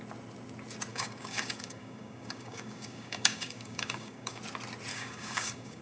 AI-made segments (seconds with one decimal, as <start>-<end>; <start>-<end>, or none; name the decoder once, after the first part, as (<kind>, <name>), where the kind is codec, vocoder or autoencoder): 0.9-4.4 (codec, DAC); 4.9-5.8